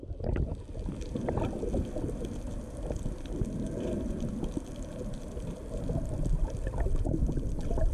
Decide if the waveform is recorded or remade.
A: recorded